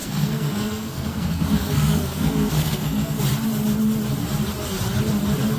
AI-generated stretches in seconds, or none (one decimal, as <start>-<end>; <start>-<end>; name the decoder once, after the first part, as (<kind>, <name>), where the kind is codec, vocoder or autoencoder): 0.0-3.2 (codec, SNAC)

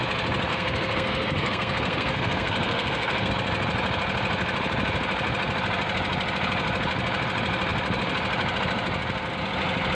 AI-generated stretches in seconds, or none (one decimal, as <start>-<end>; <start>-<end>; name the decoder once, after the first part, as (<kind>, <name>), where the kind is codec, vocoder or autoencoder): 0.5-3.3 (codec, SNAC)

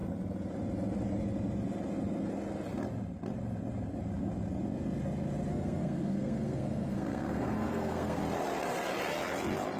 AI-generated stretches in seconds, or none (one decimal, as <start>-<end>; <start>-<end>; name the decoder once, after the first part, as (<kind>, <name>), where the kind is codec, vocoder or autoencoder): 5.5-8.2 (codec, SNAC)

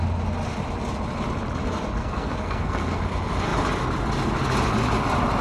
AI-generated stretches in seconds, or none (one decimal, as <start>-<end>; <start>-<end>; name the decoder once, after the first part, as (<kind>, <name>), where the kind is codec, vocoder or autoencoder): 2.0-3.0 (codec, SNAC)

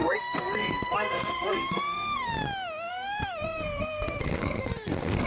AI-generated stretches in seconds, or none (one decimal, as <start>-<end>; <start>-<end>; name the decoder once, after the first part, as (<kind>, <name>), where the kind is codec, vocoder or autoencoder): 0.0-2.3 (codec, SNAC); 2.9-5.3

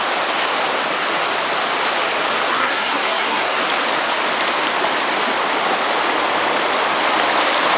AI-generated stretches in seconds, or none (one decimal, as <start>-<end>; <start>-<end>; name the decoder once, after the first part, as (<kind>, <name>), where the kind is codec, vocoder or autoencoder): 2.5-3.6 (codec, SNAC)